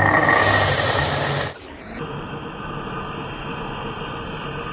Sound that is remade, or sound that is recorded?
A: recorded